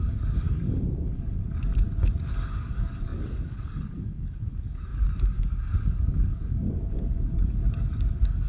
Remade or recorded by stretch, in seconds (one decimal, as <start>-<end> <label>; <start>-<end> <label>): 0.0-1.7 remade; 1.7-2.6 recorded; 2.6-8.5 remade